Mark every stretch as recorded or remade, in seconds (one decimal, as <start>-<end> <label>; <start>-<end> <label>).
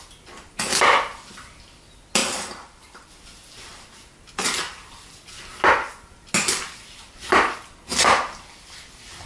0.0-2.2 recorded; 2.2-3.1 remade; 3.1-9.3 recorded